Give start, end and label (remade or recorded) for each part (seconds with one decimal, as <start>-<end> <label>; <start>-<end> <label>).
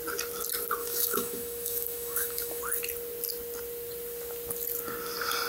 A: 0.0-0.8 recorded; 0.8-2.6 remade; 2.6-5.5 recorded